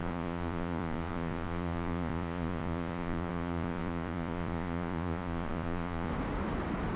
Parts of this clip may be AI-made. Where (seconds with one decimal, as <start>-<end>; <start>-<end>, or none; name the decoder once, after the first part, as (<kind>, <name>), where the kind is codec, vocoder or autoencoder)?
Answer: 0.0-6.1 (vocoder, Vocos)